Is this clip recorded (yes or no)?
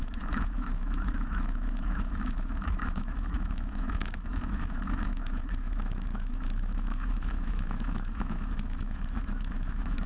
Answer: no